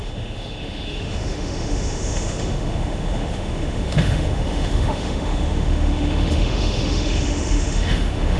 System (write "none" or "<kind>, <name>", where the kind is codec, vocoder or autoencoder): autoencoder, DAC-VAE